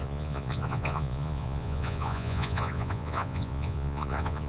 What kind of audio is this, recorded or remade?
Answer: remade